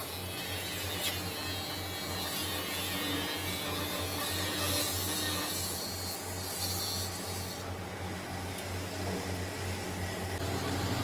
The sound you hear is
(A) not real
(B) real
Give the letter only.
B